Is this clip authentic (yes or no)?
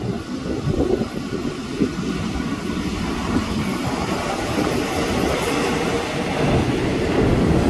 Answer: yes